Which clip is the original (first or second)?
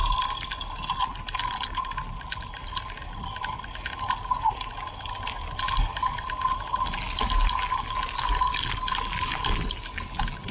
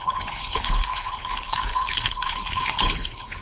first